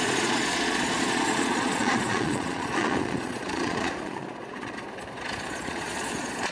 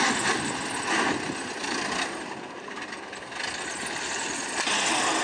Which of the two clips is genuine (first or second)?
second